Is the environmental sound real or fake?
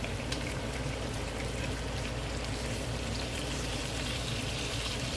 fake